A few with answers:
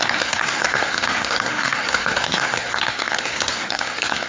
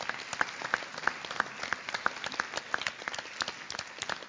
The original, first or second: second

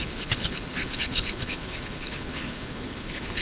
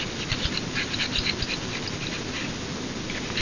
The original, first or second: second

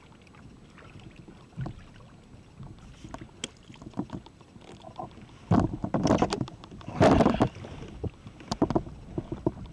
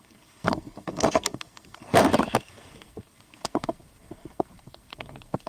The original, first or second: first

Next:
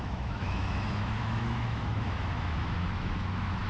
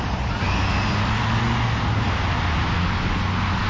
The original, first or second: second